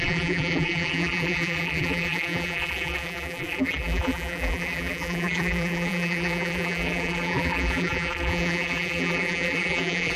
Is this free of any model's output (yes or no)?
no